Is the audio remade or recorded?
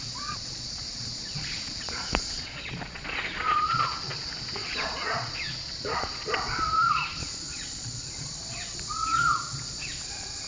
remade